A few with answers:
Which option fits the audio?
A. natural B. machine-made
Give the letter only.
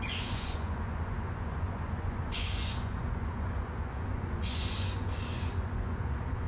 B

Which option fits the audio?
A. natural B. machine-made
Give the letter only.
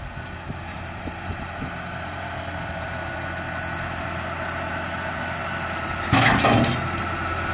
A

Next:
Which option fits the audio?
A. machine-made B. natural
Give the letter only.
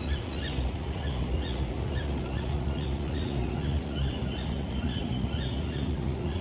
A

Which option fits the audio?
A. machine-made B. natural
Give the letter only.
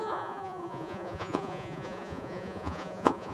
A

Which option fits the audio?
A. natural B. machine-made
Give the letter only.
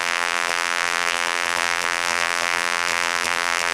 B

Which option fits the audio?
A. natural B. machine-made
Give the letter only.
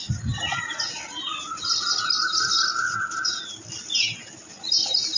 A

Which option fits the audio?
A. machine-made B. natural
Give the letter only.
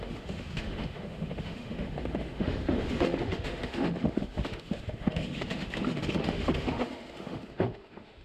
A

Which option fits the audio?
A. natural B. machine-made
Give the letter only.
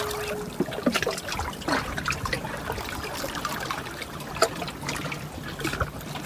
A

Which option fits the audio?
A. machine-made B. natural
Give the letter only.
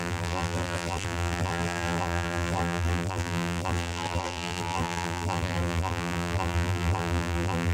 A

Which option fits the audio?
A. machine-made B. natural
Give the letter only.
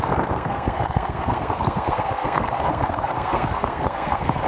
A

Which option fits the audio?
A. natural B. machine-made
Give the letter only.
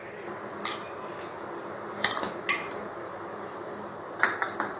A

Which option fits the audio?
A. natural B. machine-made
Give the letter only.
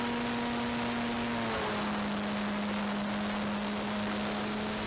A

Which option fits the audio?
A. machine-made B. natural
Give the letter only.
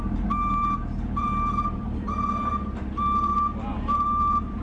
A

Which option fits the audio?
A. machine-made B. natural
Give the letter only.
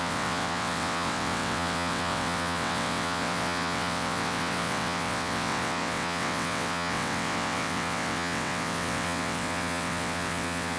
A